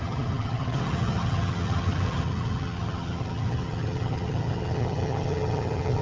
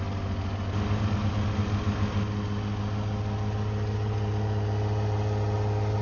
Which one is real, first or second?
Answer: second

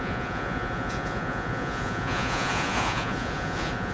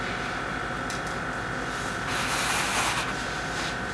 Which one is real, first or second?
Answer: second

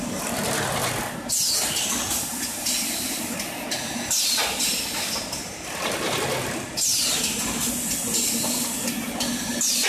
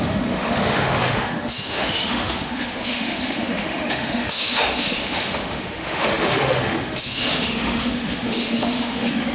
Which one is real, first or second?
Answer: first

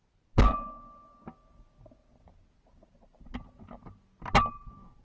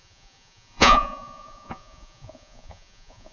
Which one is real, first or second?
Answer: first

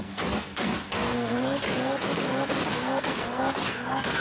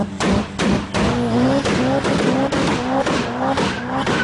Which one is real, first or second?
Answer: second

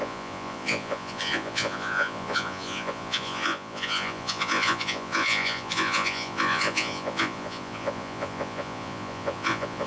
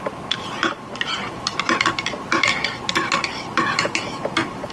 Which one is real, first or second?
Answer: second